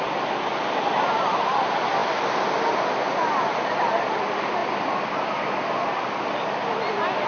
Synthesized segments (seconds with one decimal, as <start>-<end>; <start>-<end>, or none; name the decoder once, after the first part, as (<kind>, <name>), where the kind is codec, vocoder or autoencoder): none